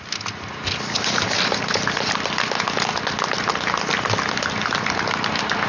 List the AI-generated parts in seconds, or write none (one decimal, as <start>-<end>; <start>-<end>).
none